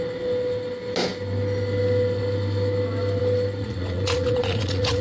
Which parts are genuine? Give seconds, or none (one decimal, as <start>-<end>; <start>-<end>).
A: 0.0-3.6